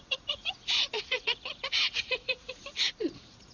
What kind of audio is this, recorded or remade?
remade